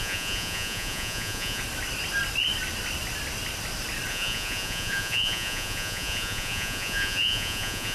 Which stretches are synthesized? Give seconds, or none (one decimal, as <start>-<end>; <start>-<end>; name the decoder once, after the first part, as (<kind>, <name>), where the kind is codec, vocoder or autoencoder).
0.0-1.6 (vocoder, Vocos); 4.1-7.9